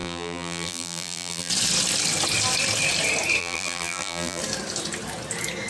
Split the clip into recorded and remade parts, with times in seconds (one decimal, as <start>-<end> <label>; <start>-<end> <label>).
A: 0.0-1.5 remade; 1.5-3.4 recorded; 3.4-4.4 remade; 4.4-5.7 recorded

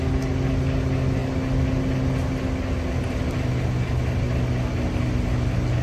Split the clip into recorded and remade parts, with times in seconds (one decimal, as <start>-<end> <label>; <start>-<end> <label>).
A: 0.0-5.8 recorded